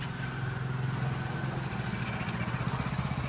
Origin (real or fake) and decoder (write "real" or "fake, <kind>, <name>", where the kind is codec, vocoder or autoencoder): real